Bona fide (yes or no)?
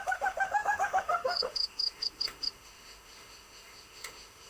no